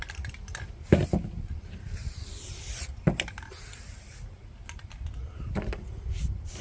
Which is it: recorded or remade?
recorded